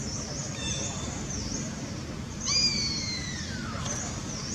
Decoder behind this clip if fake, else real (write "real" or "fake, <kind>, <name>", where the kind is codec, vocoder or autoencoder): fake, vocoder, BigVGAN v2